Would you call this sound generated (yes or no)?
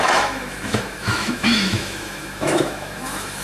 yes